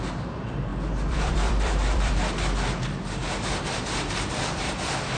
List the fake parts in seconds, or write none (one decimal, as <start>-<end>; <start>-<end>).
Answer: 0.7-2.3; 3.2-4.6